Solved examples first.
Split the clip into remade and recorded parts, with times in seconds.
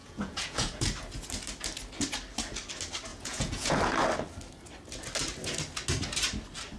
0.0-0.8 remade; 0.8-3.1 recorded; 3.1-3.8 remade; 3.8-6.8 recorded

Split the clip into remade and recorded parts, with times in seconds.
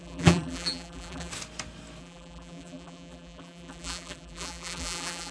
0.0-1.3 remade; 1.3-2.0 recorded; 2.0-5.3 remade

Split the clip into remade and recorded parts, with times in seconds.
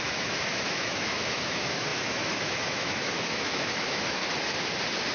0.0-4.2 remade; 4.2-5.1 recorded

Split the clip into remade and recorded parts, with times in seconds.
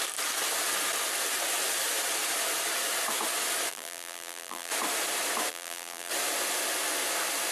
0.0-3.7 recorded; 3.7-4.7 remade; 4.7-5.5 recorded; 5.5-6.1 remade; 6.1-7.5 recorded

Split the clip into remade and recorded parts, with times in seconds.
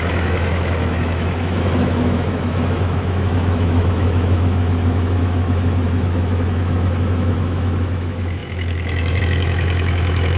0.0-10.4 remade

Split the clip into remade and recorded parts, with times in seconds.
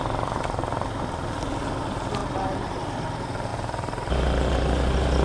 0.0-2.2 recorded; 2.2-2.8 remade; 2.8-3.5 recorded; 3.5-4.1 remade; 4.1-5.2 recorded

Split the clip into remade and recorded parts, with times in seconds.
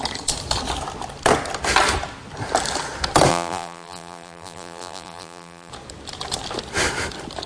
0.0-3.3 recorded; 3.3-5.7 remade; 5.7-7.5 recorded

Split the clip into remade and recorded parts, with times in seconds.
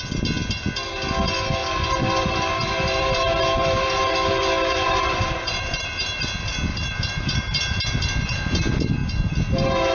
0.0-1.6 recorded; 1.6-6.2 remade; 6.2-6.7 recorded; 6.7-8.0 remade; 8.0-9.9 recorded